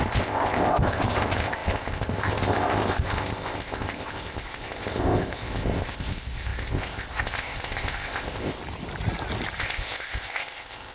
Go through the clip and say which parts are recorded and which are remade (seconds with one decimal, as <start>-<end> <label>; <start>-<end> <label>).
0.0-8.6 remade; 8.6-9.6 recorded; 9.6-10.9 remade